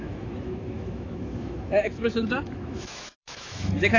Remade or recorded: remade